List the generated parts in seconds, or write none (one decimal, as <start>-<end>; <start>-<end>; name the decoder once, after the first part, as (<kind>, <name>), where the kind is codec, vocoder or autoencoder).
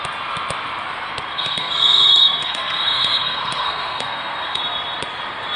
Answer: 1.3-4.6 (codec, SNAC)